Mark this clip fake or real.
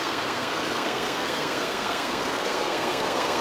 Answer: fake